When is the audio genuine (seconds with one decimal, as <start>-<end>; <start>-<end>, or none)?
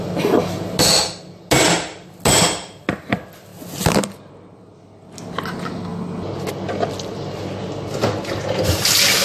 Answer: 0.0-9.2